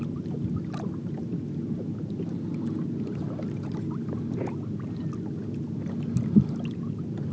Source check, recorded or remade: recorded